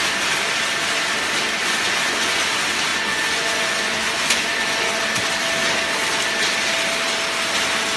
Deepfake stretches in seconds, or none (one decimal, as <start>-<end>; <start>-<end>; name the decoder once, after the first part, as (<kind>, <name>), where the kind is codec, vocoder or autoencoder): 1.6-2.4 (vocoder, Vocos); 2.9-5.0